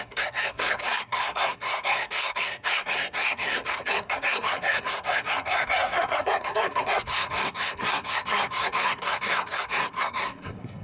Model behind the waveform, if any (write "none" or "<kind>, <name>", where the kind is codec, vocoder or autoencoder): codec, SNAC